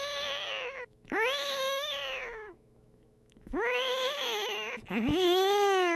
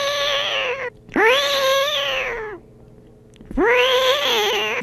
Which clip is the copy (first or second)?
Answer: first